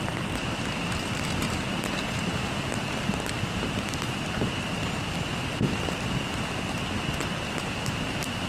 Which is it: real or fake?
real